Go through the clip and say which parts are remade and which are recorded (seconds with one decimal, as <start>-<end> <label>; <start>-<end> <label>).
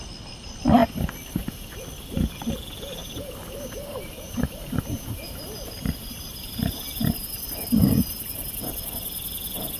0.0-3.0 recorded; 3.0-6.8 remade; 6.8-7.8 recorded; 7.8-8.5 remade; 8.5-9.8 recorded